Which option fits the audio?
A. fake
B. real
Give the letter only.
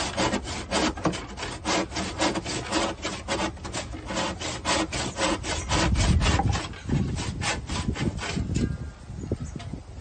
B